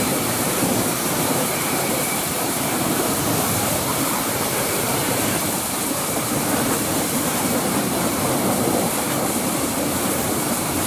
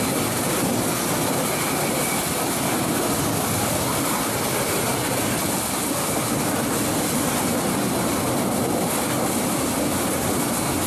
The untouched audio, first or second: second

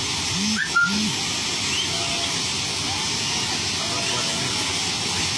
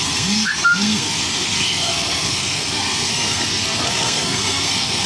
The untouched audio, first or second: first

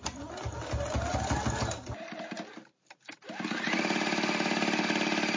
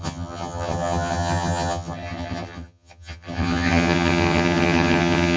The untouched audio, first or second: first